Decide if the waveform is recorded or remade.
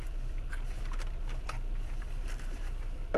remade